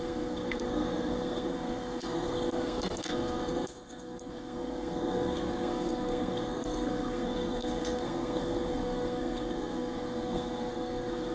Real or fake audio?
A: fake